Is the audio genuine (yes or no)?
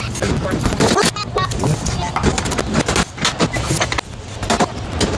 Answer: yes